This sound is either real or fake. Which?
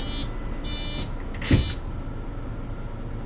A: real